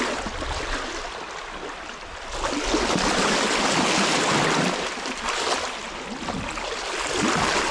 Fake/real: real